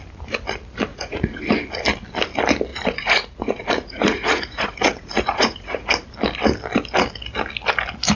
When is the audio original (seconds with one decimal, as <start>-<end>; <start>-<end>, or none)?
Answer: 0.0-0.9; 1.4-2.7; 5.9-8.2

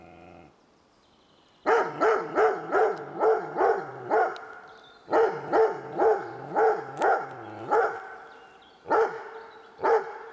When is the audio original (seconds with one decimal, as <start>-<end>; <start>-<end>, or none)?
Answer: 0.0-10.3

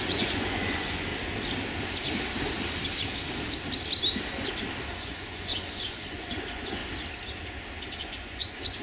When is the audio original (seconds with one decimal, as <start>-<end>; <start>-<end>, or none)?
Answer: 1.1-4.9; 6.8-8.0